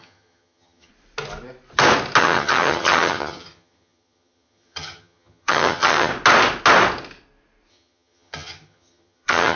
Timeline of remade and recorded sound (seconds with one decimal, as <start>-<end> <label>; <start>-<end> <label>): 0.0-0.9 remade; 0.9-2.2 recorded; 2.2-6.1 remade; 6.1-7.7 recorded; 7.7-9.6 remade